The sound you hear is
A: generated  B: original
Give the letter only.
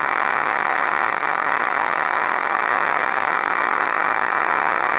A